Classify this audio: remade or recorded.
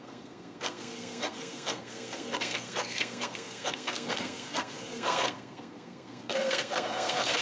remade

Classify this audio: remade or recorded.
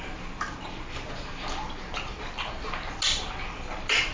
recorded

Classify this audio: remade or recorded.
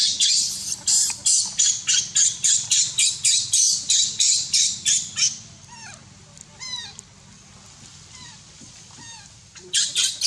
recorded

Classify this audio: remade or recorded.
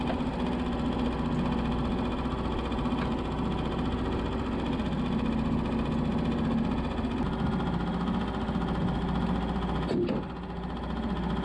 recorded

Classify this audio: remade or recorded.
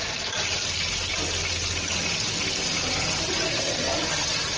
recorded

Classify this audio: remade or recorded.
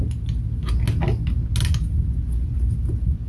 recorded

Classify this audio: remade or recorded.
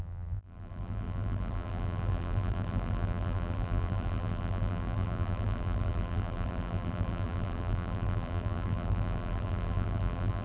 remade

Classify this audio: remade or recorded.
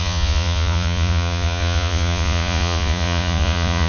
remade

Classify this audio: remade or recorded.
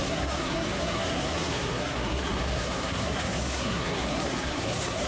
remade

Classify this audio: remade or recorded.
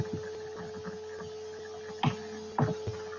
recorded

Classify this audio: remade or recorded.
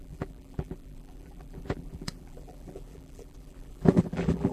remade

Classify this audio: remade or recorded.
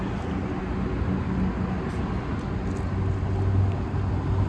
recorded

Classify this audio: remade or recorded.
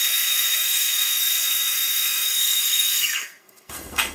remade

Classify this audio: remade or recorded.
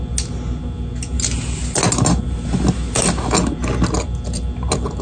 recorded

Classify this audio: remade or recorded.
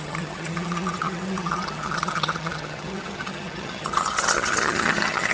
remade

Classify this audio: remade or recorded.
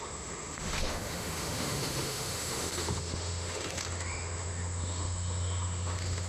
remade